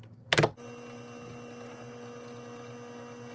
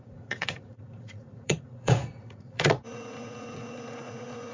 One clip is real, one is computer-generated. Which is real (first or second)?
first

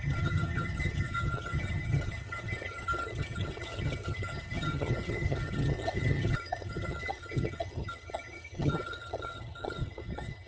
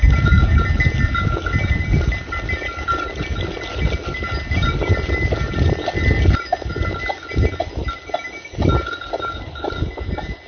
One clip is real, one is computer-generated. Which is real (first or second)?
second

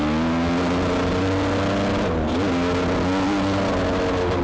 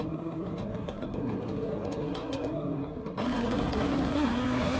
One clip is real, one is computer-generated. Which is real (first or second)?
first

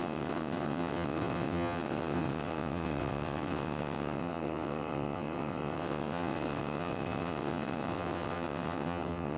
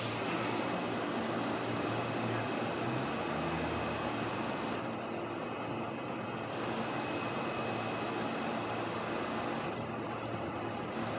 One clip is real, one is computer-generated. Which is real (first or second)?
second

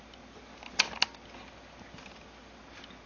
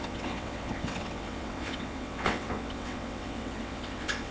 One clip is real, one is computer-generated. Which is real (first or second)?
first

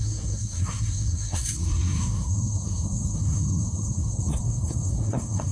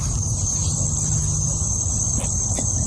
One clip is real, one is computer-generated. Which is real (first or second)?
second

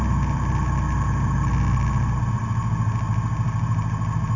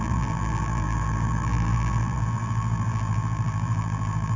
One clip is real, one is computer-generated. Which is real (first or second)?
first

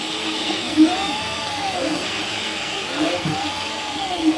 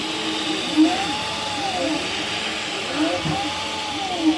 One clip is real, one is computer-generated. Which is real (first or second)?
second